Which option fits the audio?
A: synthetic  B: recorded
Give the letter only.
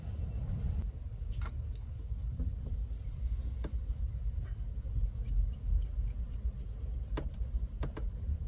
B